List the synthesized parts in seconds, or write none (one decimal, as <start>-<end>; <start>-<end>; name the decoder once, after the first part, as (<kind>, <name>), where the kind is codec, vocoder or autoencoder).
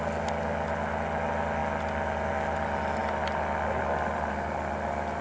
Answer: none